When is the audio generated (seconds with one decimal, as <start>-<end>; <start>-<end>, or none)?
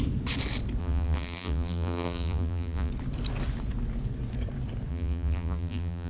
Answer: 0.8-2.9; 4.9-6.1